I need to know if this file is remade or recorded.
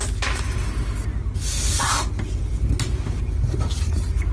recorded